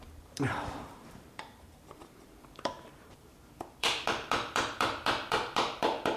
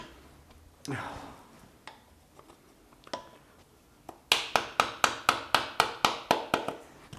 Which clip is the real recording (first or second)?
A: second